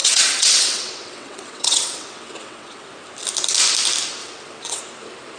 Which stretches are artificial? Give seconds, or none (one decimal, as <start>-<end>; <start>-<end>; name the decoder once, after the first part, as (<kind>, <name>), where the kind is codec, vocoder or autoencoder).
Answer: 0.0-2.9 (vocoder, WaveNeXt); 4.2-4.8